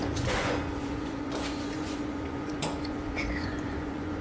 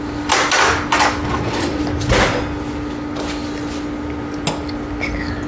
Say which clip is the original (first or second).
second